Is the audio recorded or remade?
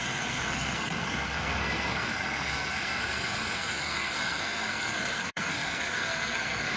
remade